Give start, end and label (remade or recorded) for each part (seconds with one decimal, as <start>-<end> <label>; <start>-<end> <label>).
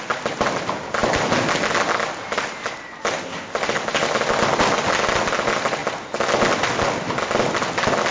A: 0.0-8.1 recorded